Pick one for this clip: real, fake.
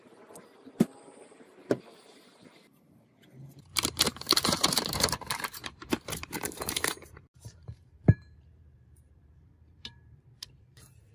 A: fake